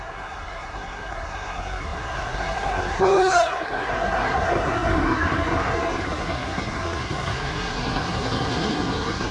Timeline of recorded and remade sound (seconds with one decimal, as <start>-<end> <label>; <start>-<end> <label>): 0.0-9.3 remade